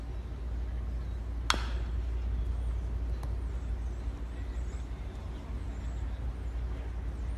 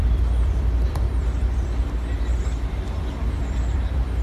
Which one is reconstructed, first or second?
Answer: second